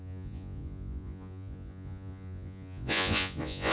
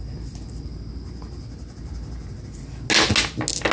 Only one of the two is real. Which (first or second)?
second